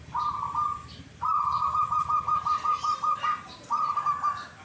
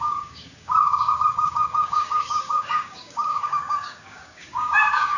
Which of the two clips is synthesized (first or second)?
second